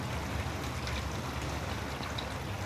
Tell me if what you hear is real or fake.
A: real